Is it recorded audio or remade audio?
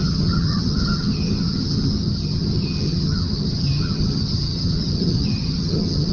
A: remade